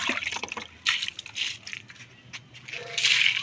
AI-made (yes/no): no